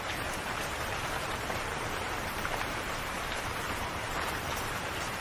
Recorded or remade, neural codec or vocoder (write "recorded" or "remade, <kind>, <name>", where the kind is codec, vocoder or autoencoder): remade, vocoder, BigVGAN v2